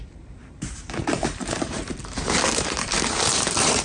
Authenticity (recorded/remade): remade